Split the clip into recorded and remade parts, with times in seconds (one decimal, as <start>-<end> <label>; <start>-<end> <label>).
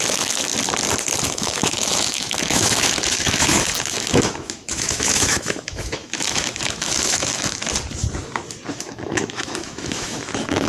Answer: 0.0-0.5 remade; 0.5-1.2 recorded; 1.2-7.6 remade; 7.6-8.7 recorded; 8.7-10.7 remade